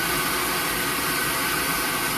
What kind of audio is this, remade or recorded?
recorded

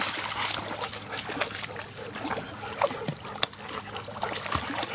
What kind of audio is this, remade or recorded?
recorded